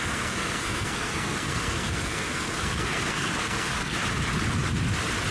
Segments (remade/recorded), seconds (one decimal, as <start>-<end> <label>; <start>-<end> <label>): 0.0-4.0 remade; 4.0-5.3 recorded